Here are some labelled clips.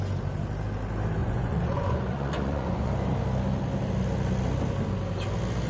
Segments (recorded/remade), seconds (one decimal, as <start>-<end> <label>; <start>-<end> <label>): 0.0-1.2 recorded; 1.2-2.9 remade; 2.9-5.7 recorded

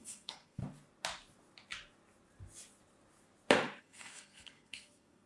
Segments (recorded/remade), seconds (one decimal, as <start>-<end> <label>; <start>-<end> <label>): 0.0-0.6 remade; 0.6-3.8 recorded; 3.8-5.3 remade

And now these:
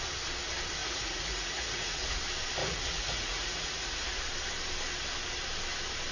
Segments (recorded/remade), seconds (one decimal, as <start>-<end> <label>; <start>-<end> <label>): 0.0-0.8 recorded; 0.8-2.2 remade; 2.2-2.6 recorded; 2.6-4.2 remade; 4.2-6.1 recorded

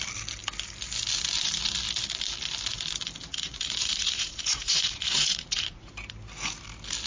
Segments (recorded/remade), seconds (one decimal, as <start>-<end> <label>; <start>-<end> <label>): 0.0-3.3 recorded; 3.3-5.9 remade; 5.9-7.1 recorded

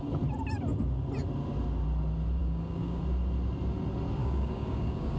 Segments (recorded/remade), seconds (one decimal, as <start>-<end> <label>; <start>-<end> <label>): 0.0-2.4 recorded; 2.4-3.0 remade; 3.0-4.2 recorded; 4.2-5.2 remade

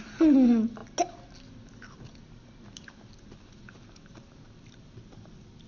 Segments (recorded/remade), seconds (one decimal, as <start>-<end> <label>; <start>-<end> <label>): 0.0-5.7 recorded

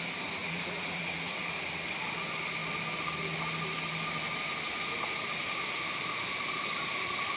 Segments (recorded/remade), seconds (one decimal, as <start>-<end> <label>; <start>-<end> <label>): 0.0-0.4 recorded; 0.4-1.4 remade; 1.4-7.4 recorded

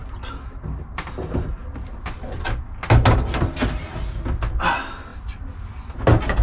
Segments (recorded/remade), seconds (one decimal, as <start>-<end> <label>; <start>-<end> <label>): 0.0-6.4 recorded